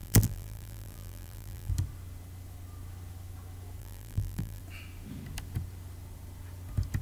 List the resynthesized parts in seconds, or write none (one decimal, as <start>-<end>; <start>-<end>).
0.0-1.7; 3.8-4.6